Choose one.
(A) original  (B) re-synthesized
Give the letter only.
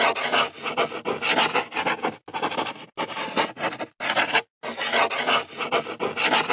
A